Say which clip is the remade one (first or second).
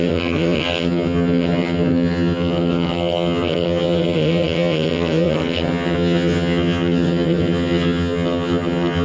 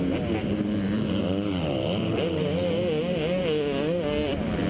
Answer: first